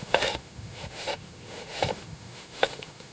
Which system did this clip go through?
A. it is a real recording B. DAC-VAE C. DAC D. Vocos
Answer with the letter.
B